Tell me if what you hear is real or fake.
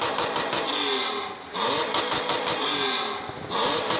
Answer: real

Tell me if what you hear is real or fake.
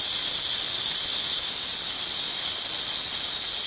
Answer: real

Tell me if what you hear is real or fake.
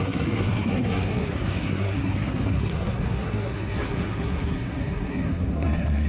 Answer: fake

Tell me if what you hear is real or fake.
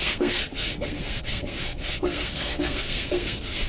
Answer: fake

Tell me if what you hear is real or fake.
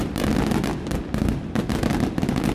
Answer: real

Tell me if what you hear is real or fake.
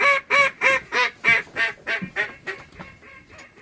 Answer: real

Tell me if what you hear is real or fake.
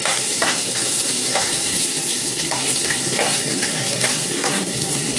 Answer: fake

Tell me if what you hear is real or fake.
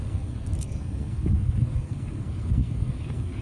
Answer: fake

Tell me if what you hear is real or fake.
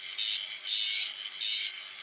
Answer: real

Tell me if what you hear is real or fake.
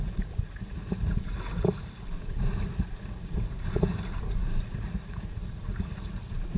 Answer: fake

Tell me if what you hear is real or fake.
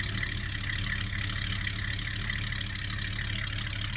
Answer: real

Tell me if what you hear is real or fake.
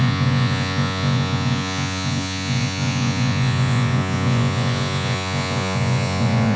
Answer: fake